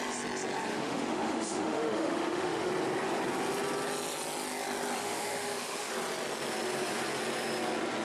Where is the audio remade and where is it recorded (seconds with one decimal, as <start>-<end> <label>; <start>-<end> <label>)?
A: 0.0-0.7 recorded; 0.7-2.7 remade; 2.7-5.0 recorded; 5.0-5.9 remade; 5.9-8.0 recorded